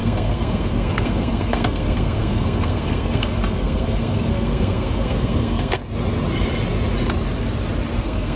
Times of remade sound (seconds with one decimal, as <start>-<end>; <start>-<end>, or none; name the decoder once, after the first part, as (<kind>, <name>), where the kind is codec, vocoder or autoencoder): 0.0-5.8 (codec, SNAC); 8.0-8.4